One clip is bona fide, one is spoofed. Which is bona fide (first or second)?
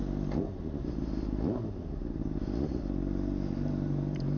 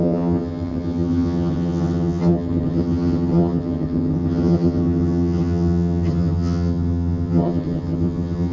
first